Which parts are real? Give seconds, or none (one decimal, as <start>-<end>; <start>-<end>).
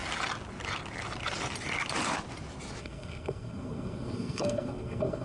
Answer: 0.0-2.8